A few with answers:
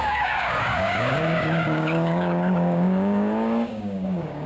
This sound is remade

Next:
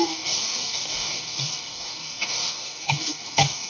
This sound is remade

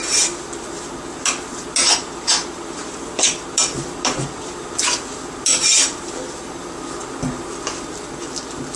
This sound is recorded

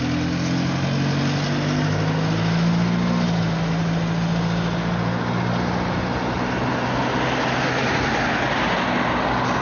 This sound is recorded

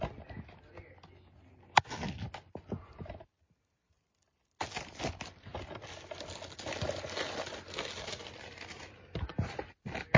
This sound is recorded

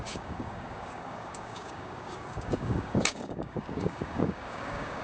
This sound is remade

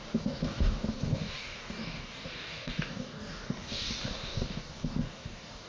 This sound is remade